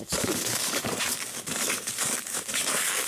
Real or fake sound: fake